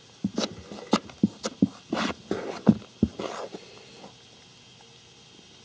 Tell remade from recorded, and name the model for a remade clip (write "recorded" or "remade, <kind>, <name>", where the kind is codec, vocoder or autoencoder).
recorded